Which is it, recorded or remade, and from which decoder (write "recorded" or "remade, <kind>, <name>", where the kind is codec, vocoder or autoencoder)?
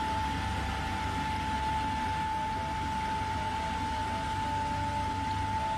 recorded